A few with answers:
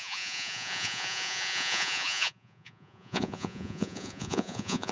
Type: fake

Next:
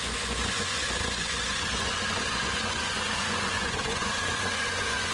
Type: fake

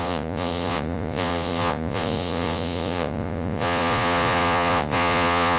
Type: fake